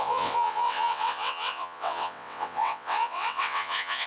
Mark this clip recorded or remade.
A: remade